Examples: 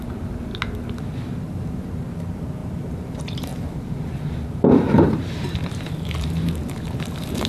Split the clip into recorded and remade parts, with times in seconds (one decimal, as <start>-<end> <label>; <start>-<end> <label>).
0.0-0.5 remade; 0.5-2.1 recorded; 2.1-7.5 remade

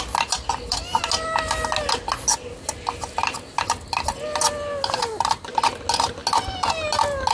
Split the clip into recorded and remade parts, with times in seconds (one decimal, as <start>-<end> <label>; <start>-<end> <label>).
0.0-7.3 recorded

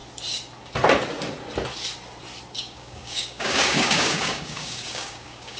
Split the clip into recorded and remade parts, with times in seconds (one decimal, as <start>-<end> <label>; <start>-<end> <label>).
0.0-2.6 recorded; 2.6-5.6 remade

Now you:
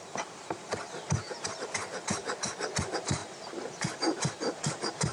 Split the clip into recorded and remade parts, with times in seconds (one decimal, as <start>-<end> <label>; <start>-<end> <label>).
0.0-2.2 remade; 2.2-2.8 recorded; 2.8-5.1 remade

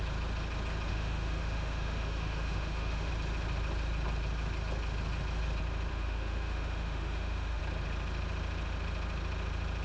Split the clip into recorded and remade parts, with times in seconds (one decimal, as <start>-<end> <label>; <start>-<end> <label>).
0.0-0.9 recorded; 0.9-3.1 remade; 3.1-5.9 recorded; 5.9-7.6 remade; 7.6-9.8 recorded

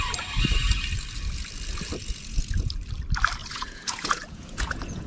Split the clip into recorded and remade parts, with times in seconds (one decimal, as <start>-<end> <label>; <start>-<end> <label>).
0.0-3.4 recorded; 3.4-5.1 remade